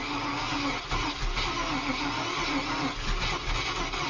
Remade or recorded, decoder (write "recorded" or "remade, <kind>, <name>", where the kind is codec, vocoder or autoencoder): recorded